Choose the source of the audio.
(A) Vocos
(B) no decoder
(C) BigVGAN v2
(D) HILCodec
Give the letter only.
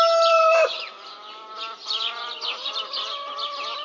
B